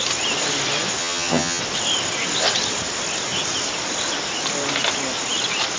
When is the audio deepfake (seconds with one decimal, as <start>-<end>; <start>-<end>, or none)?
1.0-1.6